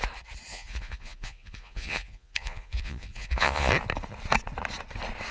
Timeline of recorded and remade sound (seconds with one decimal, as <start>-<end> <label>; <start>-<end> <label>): 0.0-0.5 recorded; 0.5-3.7 remade; 3.7-5.3 recorded